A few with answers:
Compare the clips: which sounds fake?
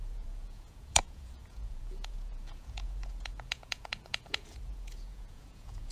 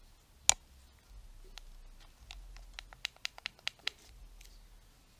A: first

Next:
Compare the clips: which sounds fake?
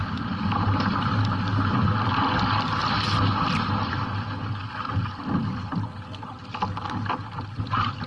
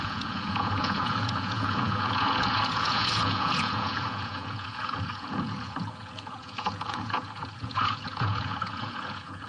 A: second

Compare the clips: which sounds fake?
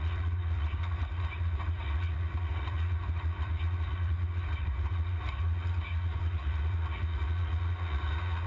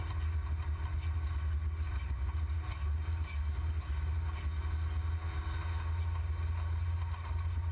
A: first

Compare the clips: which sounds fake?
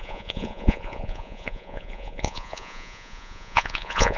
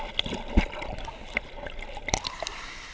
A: first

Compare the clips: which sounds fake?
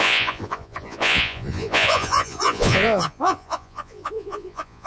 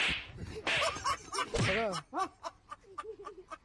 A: first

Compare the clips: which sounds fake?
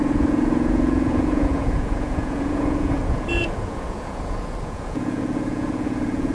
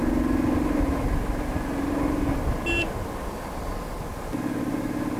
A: first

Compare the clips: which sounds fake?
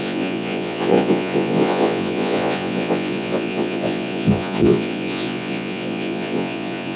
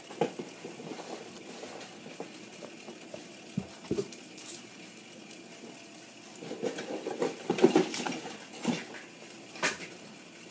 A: first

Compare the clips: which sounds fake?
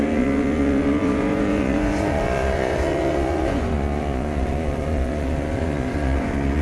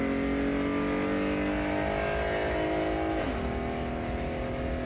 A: first